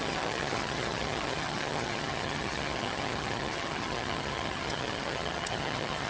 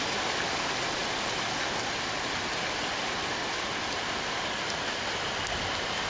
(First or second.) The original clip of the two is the second